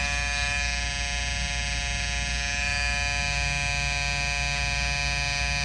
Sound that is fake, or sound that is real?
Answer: real